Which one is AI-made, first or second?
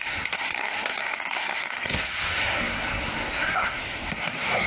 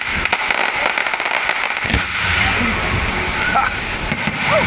first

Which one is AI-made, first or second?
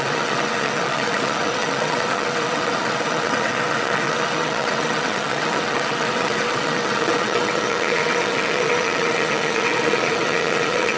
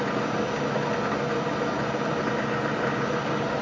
first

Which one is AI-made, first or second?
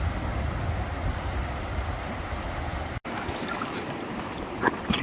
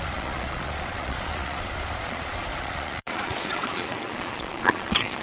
second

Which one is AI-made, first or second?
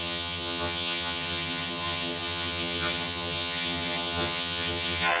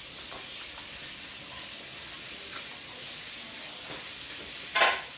first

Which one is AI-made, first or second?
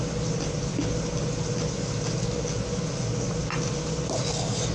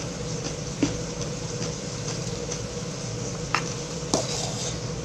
second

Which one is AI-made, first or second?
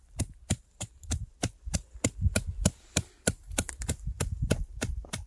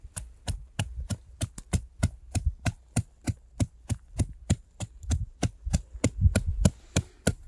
first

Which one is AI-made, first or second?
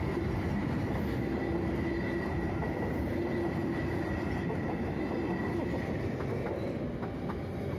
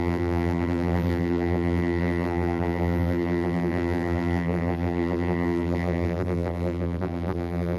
second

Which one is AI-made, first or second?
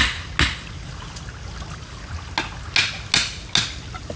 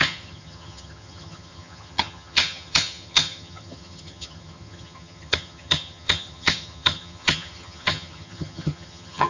second